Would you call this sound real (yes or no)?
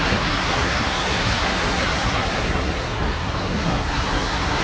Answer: no